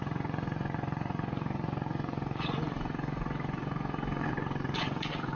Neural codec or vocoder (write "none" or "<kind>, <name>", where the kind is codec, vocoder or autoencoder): vocoder, Vocos